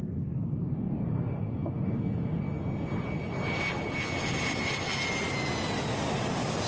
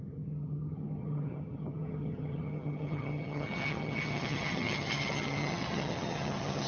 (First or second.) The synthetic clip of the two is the second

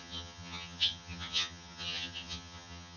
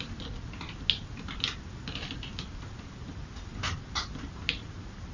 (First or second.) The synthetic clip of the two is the first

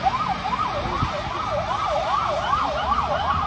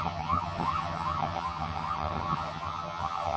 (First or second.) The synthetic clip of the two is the second